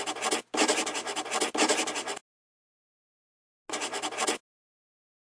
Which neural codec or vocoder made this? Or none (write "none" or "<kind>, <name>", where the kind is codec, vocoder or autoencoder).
none